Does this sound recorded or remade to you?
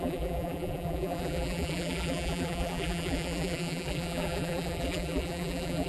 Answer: remade